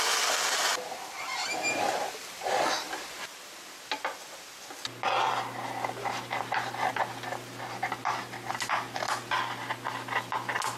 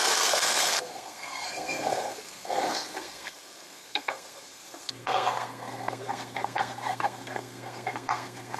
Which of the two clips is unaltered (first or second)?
first